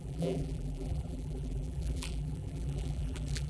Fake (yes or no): yes